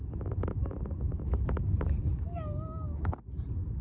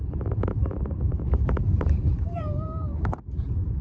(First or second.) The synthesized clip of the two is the second